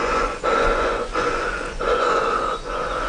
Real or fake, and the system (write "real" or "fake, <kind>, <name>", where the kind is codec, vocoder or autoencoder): fake, vocoder, Vocos